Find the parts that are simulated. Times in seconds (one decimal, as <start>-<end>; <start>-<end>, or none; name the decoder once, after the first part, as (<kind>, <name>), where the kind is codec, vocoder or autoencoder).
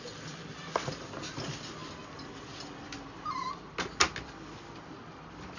none